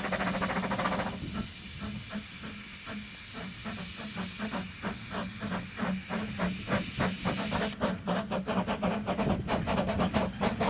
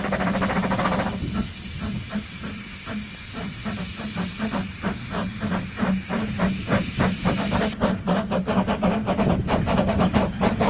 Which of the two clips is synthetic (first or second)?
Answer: second